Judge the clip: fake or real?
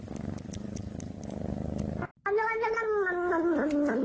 real